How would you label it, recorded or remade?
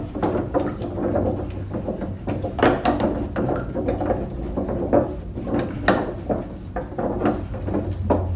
recorded